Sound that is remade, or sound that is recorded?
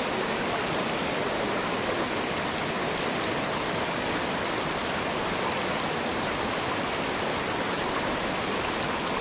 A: recorded